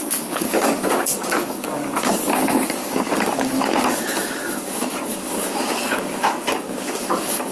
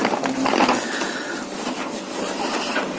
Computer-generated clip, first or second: first